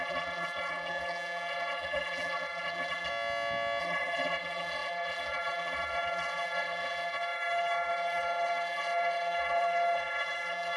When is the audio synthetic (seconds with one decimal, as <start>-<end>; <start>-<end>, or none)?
0.0-3.1; 3.8-10.8

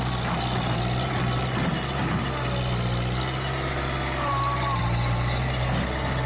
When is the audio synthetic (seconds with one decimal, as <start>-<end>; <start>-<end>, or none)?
none

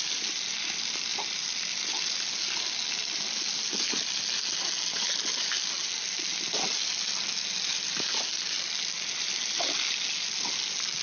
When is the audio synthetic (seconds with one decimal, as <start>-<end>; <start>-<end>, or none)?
none

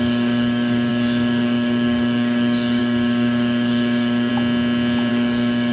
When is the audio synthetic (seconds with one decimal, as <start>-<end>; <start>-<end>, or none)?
0.0-4.3; 5.1-5.7

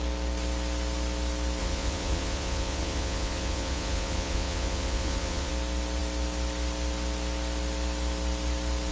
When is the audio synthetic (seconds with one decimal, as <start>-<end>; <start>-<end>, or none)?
1.6-5.5